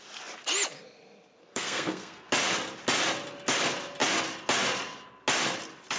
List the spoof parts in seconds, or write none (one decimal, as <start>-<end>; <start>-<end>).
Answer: 1.4-2.3